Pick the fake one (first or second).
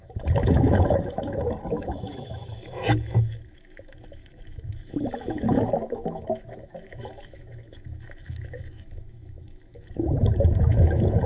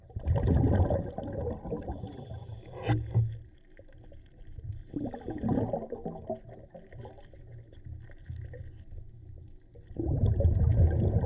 first